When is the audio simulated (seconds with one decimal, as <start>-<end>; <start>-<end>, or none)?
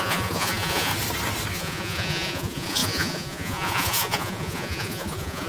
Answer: 0.0-0.9; 1.5-5.5